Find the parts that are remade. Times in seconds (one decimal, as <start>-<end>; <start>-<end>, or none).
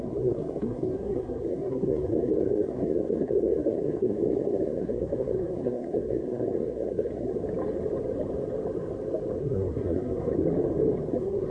0.0-7.4; 9.4-10.3; 11.1-11.5